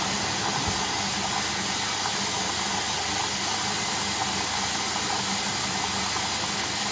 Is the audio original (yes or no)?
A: yes